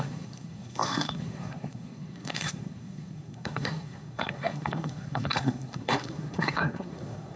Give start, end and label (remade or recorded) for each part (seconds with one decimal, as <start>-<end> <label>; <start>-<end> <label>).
0.0-7.4 remade